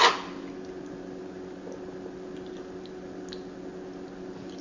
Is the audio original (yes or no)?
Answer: yes